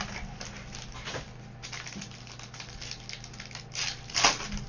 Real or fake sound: real